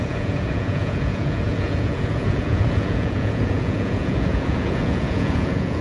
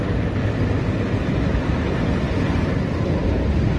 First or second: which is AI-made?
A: first